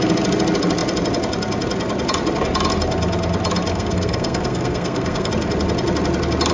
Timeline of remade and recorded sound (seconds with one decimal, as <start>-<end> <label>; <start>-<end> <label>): 0.0-3.7 recorded; 3.7-5.3 remade; 5.3-6.5 recorded